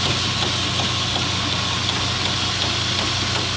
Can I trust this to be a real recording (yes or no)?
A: yes